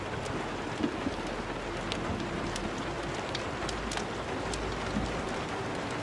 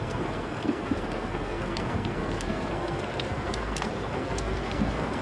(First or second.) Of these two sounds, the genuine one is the first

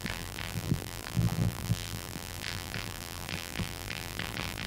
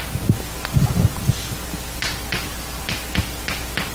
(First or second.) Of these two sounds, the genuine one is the second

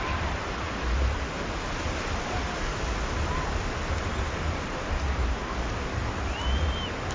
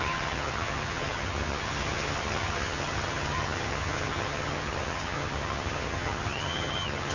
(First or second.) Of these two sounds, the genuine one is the first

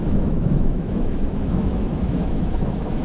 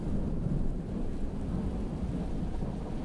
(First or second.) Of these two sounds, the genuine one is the second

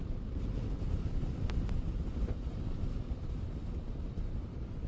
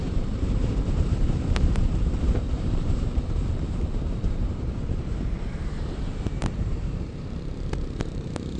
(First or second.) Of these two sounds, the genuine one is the first